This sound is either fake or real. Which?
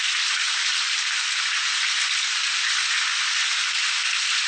real